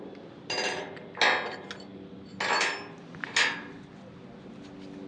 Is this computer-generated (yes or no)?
no